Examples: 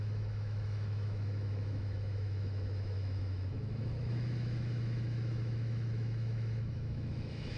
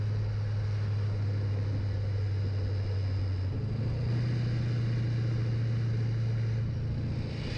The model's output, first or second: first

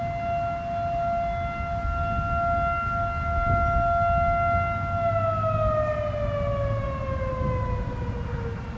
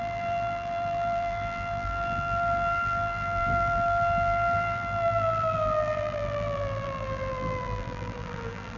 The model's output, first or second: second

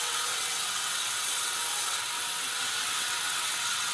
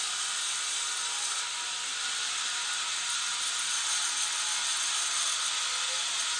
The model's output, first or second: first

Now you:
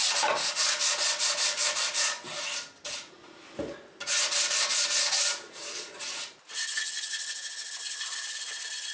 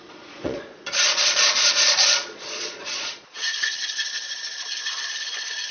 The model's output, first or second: second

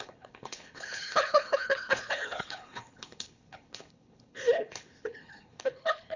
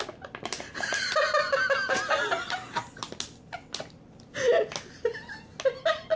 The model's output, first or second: first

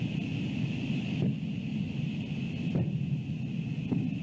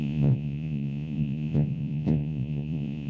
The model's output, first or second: second